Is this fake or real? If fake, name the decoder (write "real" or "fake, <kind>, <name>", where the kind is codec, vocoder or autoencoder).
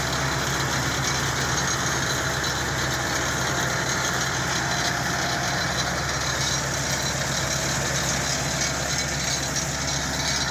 real